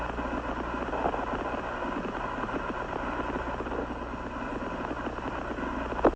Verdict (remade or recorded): recorded